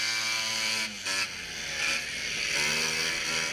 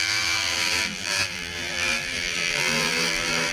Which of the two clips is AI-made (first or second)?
second